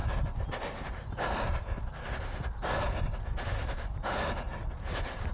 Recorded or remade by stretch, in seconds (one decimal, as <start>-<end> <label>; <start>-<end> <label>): 0.0-5.3 recorded